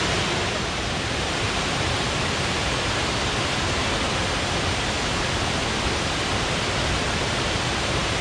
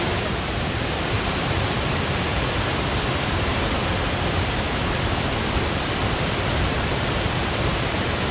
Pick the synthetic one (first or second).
second